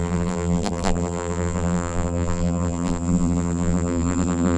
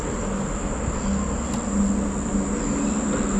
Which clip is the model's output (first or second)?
first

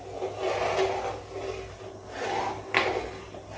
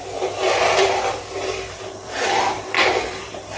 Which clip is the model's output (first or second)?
second